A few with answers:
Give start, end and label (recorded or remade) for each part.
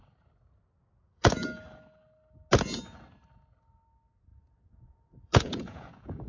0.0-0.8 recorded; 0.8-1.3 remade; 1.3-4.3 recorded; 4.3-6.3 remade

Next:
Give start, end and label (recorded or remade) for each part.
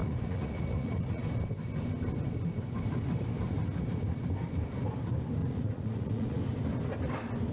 0.0-1.2 remade; 1.2-5.4 recorded; 5.4-6.4 remade; 6.4-7.5 recorded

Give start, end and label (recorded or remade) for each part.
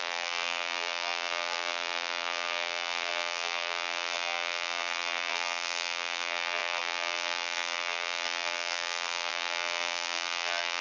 0.0-10.8 remade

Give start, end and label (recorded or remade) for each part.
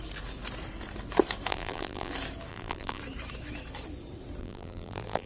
0.0-1.5 recorded; 1.5-2.1 remade; 2.1-2.5 recorded; 2.5-3.0 remade; 3.0-4.4 recorded; 4.4-5.3 remade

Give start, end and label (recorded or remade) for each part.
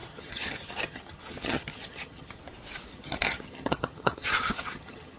0.0-2.4 remade; 2.4-2.9 recorded; 2.9-5.2 remade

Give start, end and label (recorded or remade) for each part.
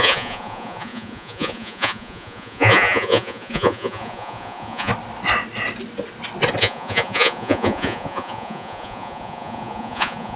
0.0-4.9 remade; 4.9-6.6 recorded; 6.6-10.4 remade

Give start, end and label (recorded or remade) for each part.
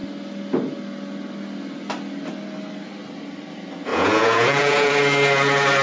0.0-3.9 recorded; 3.9-4.9 remade; 4.9-5.8 recorded